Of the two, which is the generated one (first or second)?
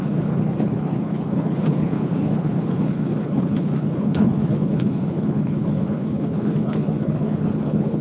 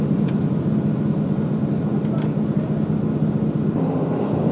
first